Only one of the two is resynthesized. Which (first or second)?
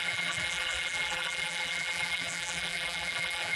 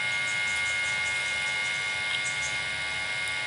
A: first